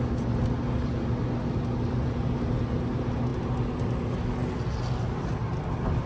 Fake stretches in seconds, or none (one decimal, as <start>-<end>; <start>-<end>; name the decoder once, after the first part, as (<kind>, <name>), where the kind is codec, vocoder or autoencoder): none